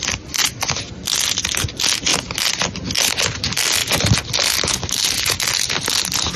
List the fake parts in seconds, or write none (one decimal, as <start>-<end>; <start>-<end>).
none